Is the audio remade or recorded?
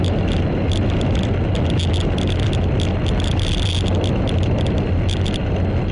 recorded